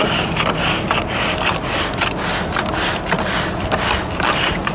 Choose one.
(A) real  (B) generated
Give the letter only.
A